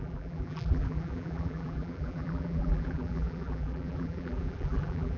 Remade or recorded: remade